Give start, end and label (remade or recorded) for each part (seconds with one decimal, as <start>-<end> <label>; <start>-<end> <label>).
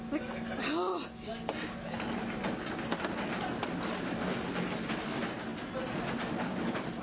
0.0-7.0 recorded